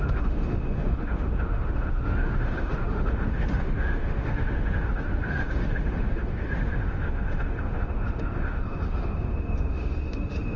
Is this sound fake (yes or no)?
yes